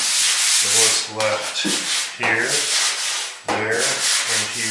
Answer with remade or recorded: recorded